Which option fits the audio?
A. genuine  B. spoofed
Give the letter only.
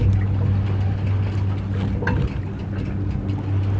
A